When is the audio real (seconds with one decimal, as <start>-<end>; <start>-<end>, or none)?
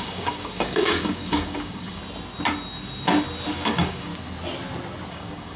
2.0-3.5; 4.1-5.1